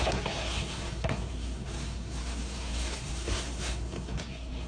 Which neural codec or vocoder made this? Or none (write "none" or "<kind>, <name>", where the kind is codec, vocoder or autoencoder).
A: codec, SNAC